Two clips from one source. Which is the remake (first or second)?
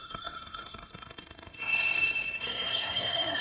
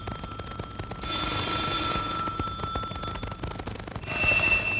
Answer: first